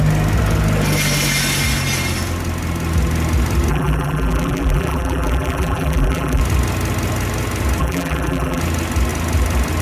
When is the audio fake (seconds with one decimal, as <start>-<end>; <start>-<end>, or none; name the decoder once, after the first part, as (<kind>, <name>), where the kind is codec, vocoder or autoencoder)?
3.7-6.4 (vocoder, BigVGAN v2); 7.8-8.6